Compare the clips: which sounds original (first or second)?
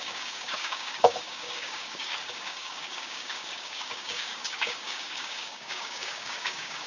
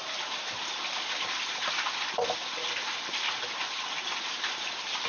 second